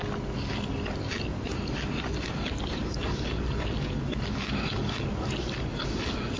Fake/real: real